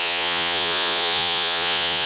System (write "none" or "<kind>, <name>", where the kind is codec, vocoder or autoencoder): vocoder, Vocos